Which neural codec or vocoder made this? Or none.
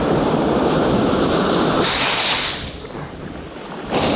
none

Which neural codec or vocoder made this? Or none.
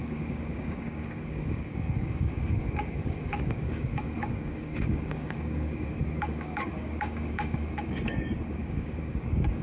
codec, DAC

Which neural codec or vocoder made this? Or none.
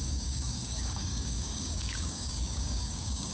codec, DAC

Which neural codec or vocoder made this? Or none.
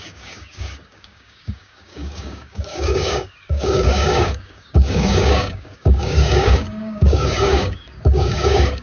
codec, DAC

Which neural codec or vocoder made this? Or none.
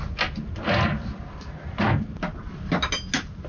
none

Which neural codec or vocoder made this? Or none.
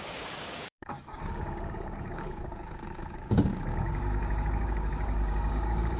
codec, DAC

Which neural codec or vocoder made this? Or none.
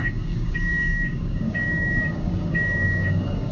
codec, DAC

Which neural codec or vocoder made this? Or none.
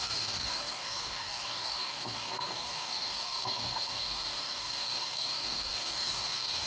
codec, DAC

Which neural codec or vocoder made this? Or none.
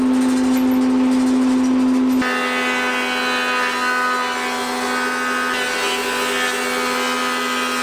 none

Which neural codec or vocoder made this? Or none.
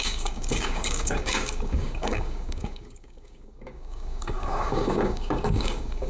codec, DAC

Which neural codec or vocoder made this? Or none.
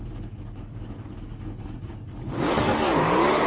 codec, DAC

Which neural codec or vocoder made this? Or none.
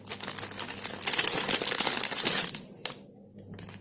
none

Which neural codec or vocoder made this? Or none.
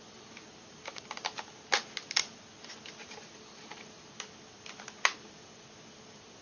none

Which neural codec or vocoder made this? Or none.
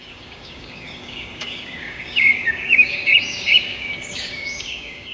codec, DAC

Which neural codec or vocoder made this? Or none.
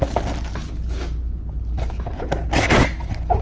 none